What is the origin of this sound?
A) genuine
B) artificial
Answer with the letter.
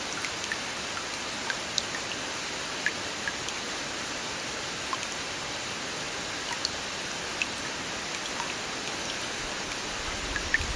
A